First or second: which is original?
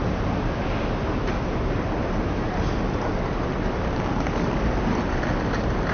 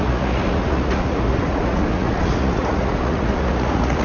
first